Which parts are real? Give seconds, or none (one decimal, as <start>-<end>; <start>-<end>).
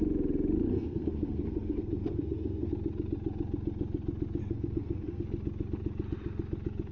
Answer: 0.0-0.7; 2.7-4.4; 5.2-6.9